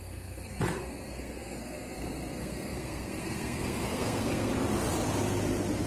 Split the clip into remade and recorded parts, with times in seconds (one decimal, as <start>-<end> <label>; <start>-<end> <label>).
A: 0.0-4.5 remade; 4.5-5.9 recorded